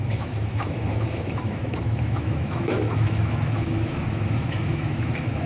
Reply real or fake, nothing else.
fake